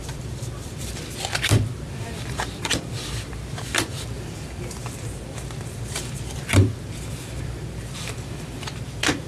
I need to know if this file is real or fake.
fake